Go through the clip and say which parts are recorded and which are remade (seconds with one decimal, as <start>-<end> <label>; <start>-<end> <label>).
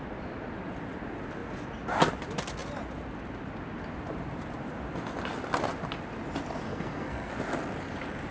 0.0-6.7 recorded; 6.7-7.3 remade; 7.3-8.3 recorded